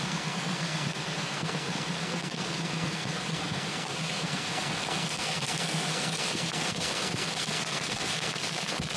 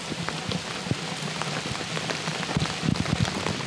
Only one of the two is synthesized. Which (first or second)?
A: first